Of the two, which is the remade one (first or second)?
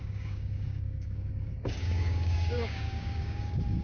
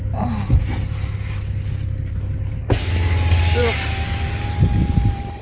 first